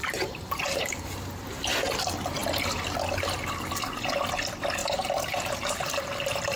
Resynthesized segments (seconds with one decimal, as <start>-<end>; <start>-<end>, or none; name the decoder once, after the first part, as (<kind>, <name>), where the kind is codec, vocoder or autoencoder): 0.0-1.9 (vocoder, BigVGAN v2); 4.8-6.0